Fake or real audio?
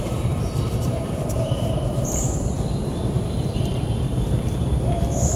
fake